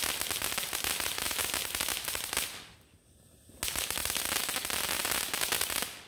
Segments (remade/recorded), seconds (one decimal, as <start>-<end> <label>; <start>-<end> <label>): 0.0-6.1 recorded